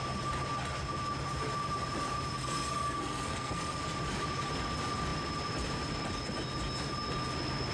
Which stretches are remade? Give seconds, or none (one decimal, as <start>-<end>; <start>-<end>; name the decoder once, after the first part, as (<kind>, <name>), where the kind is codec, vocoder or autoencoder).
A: 2.4-3.8 (codec, SNAC)